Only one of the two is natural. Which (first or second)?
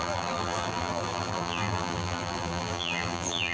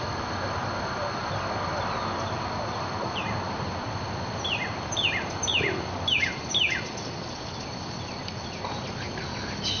second